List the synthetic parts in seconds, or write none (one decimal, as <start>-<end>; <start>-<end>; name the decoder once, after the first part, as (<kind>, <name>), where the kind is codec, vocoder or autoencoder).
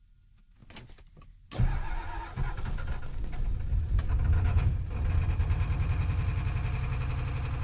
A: none